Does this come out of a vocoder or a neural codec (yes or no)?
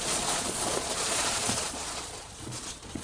yes